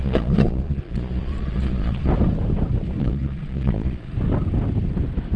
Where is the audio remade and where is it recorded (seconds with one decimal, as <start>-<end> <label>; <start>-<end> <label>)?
0.0-2.1 remade; 2.1-3.0 recorded; 3.0-4.1 remade; 4.1-5.4 recorded